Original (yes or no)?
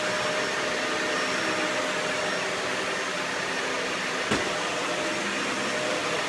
yes